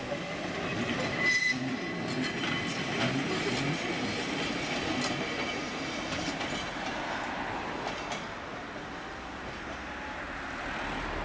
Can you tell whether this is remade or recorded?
recorded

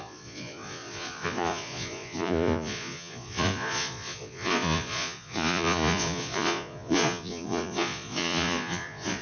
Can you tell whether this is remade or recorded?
remade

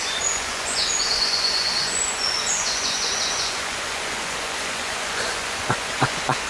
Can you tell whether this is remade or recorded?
remade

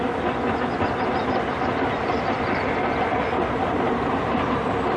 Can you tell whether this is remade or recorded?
recorded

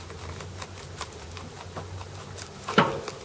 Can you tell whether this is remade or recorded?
recorded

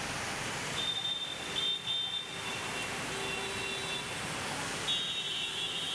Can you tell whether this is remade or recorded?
recorded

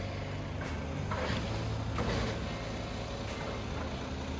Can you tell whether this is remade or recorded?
recorded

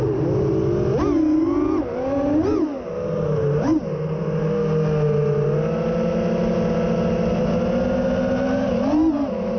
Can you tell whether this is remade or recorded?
recorded